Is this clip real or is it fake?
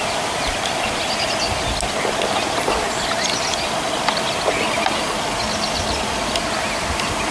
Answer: real